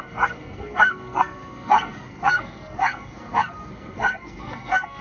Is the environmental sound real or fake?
fake